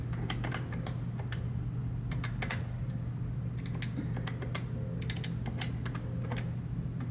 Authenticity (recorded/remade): recorded